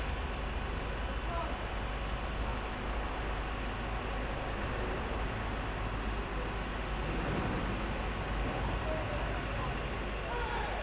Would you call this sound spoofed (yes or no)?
no